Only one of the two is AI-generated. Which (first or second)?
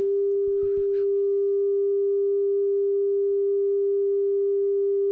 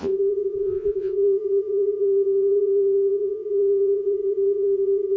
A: second